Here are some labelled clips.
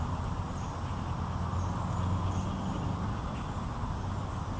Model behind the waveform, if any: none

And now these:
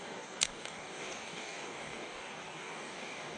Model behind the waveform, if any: codec, DAC